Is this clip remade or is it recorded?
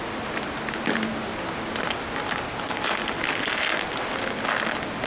recorded